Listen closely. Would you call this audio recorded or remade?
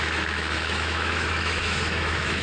remade